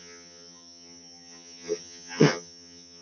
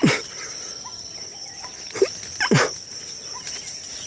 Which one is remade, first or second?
first